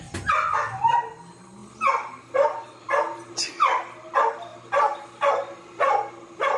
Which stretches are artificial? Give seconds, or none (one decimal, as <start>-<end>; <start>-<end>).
none